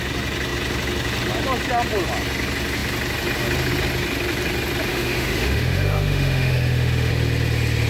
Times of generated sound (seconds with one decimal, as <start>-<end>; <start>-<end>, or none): 4.9-7.1